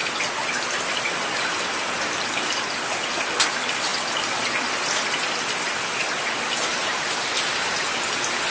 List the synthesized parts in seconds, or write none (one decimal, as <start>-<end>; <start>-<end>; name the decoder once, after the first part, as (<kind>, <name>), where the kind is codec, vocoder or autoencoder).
none